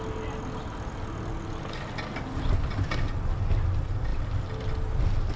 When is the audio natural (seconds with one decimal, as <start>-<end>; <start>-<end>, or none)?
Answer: 0.0-5.4